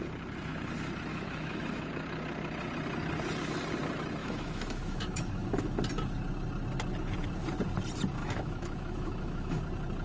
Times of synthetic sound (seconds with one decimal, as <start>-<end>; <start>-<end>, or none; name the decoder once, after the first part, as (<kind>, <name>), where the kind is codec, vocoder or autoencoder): 1.1-1.9 (autoencoder, DAC-VAE); 4.2-5.8; 8.2-9.6